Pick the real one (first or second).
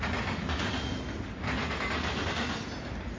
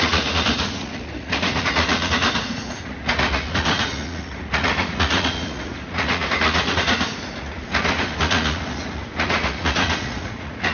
first